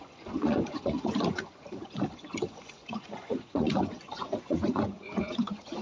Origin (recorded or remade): remade